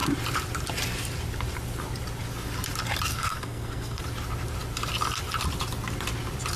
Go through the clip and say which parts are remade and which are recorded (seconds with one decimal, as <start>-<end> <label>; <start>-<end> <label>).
0.0-3.1 recorded; 3.1-4.0 remade; 4.0-6.6 recorded